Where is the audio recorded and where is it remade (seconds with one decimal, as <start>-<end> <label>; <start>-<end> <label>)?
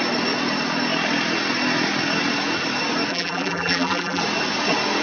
0.0-3.1 recorded; 3.1-4.2 remade; 4.2-5.0 recorded